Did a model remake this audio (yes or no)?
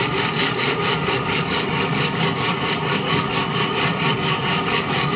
yes